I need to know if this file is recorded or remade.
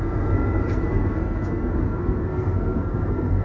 remade